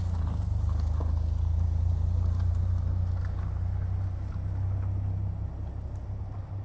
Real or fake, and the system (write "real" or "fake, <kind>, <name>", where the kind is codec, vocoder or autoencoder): real